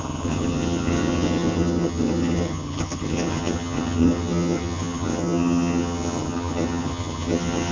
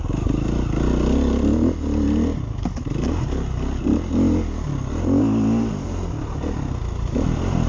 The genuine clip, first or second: second